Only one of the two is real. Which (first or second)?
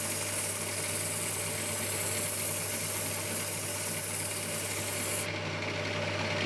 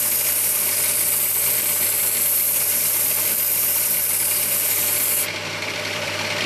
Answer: first